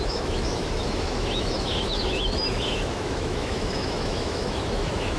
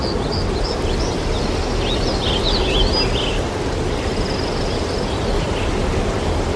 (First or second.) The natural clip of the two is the second